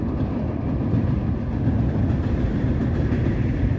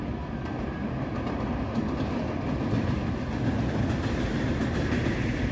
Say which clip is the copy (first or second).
first